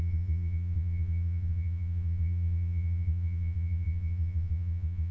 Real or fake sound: fake